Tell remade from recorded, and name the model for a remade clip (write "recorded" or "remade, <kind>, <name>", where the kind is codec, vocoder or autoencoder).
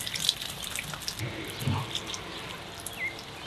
remade, vocoder, BigVGAN v2